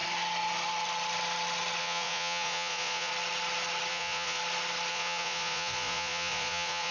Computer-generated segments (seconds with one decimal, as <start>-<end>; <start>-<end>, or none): 1.8-3.1; 3.9-4.4; 4.9-6.9